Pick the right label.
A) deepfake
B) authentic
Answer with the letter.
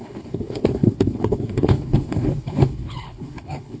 A